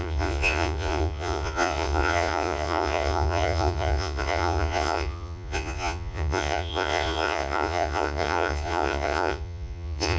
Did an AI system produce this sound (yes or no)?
yes